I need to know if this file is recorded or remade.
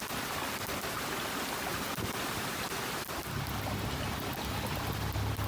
recorded